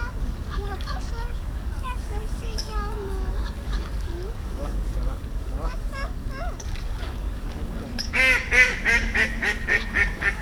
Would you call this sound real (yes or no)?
no